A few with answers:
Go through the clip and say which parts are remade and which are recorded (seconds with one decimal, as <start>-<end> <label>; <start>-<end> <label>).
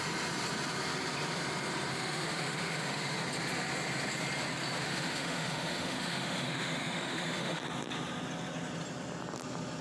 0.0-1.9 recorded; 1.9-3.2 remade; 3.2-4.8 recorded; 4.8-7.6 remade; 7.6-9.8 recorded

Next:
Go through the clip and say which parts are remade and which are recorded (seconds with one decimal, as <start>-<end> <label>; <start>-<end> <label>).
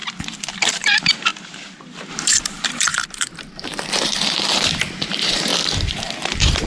0.0-0.7 recorded; 0.7-1.3 remade; 1.3-2.1 recorded; 2.1-5.5 remade; 5.5-6.3 recorded; 6.3-6.7 remade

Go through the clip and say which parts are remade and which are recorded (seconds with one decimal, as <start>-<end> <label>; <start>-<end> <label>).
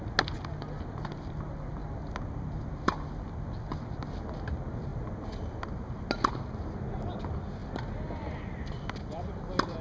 0.0-9.8 recorded